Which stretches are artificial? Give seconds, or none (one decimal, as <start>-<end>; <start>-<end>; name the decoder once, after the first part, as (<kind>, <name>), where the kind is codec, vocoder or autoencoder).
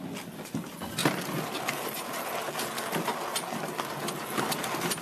none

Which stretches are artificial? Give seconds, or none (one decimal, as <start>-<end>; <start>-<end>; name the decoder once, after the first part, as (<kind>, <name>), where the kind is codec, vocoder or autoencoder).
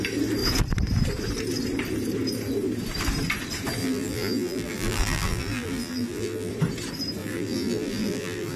3.8-6.5 (vocoder, BigVGAN v2); 7.2-8.6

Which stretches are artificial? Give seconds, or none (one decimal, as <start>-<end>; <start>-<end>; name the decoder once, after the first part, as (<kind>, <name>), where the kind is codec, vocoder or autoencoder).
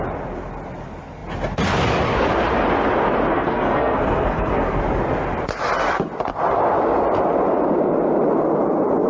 3.3-4.8 (codec, SNAC)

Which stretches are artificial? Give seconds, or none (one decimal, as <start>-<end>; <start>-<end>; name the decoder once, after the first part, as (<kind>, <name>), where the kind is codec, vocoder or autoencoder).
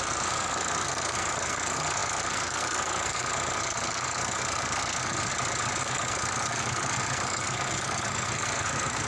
0.0-5.3 (codec, SNAC); 5.8-9.1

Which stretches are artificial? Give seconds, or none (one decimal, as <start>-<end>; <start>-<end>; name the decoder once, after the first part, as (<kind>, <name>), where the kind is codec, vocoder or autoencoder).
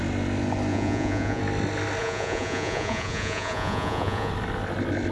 0.7-1.4 (vocoder, Vocos); 2.0-4.3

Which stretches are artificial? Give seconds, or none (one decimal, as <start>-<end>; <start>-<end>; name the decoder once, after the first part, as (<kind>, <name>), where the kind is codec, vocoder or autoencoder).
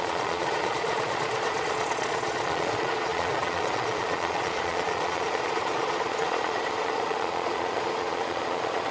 0.0-8.9 (vocoder, Vocos)